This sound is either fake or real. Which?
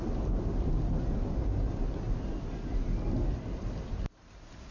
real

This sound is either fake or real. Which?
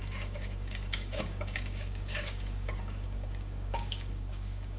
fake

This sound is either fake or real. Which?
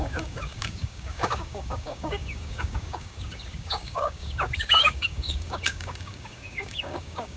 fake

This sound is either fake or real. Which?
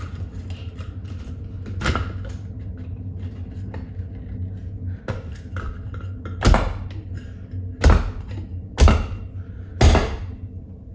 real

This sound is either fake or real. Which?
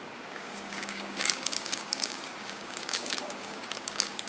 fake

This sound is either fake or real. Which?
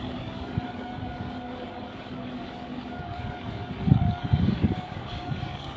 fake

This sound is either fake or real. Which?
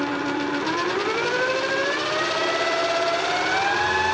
real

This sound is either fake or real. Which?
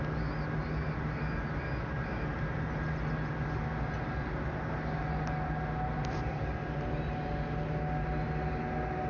real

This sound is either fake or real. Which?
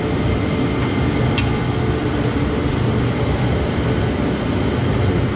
real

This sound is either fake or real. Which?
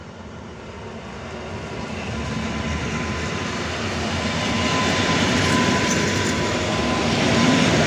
real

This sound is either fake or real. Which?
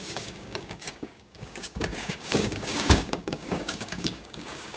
fake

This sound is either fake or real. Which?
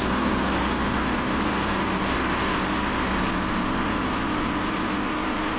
real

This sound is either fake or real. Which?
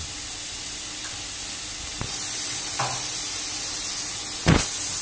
real